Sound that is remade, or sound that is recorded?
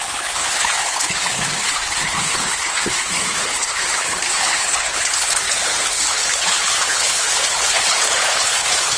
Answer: remade